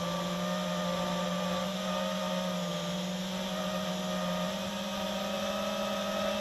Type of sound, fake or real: real